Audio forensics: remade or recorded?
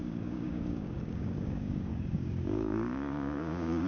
remade